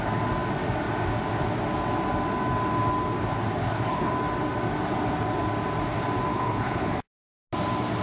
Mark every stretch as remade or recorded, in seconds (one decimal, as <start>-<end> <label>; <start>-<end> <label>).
0.0-3.6 recorded; 3.6-4.1 remade; 4.1-6.3 recorded; 6.3-6.9 remade; 6.9-8.0 recorded